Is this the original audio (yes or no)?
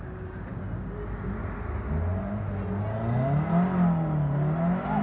yes